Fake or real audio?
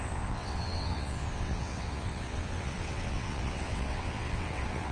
fake